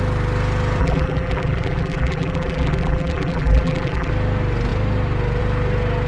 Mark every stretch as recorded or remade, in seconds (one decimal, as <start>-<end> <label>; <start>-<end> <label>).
0.0-0.8 recorded; 0.8-4.1 remade; 4.1-6.1 recorded